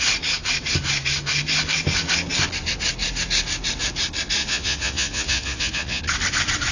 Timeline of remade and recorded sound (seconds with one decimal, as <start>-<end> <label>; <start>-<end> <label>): 0.0-4.4 recorded; 4.4-6.0 remade; 6.0-6.7 recorded